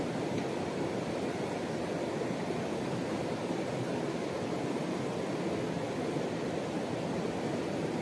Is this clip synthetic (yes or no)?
no